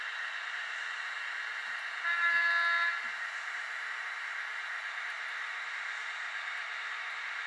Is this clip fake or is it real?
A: real